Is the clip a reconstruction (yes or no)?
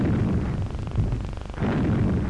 no